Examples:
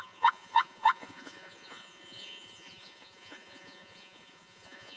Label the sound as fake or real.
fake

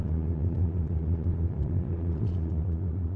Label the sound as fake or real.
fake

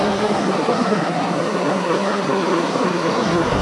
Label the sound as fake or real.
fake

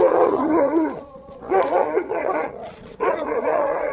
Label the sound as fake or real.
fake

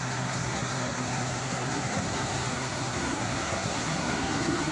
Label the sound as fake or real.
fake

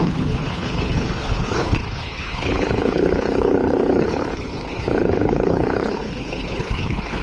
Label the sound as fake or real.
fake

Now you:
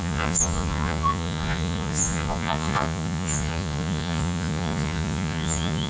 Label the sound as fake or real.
fake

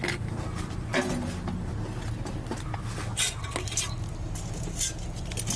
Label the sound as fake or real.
real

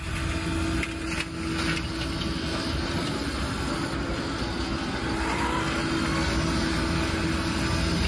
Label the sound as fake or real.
real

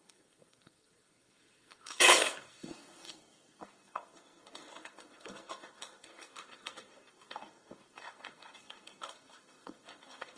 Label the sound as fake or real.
fake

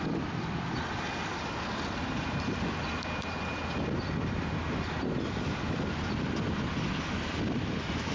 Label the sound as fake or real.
real